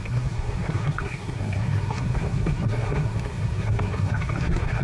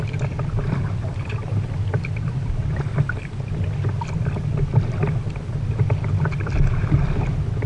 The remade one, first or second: first